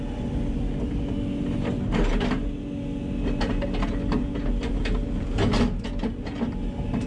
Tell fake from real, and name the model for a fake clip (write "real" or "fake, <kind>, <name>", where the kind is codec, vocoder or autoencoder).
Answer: real